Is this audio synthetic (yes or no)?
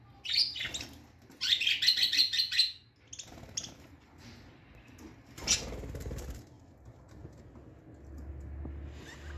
no